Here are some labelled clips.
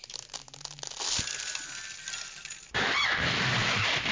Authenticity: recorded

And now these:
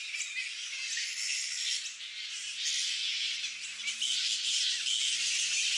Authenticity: recorded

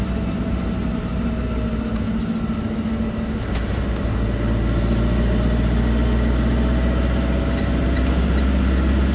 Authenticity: recorded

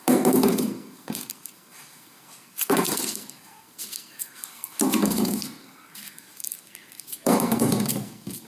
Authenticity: remade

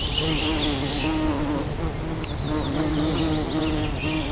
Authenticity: recorded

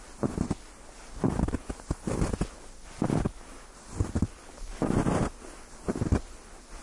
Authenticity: recorded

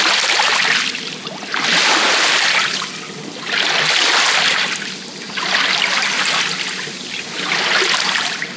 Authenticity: recorded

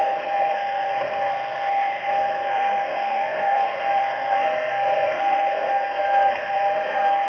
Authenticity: remade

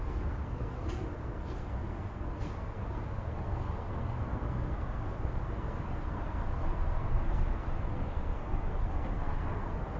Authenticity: remade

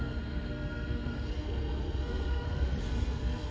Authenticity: remade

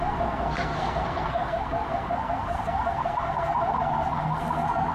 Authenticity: remade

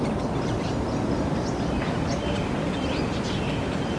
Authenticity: recorded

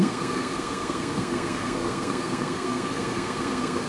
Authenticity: remade